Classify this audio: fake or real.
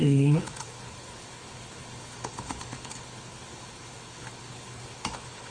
fake